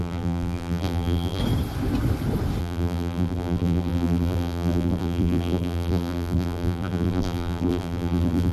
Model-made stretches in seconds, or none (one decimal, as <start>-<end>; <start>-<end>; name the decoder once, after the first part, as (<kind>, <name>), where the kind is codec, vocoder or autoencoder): 0.0-1.4 (vocoder, BigVGAN v2); 2.6-8.5